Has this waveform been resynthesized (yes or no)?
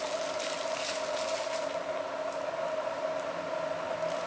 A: no